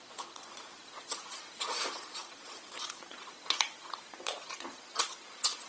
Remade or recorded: remade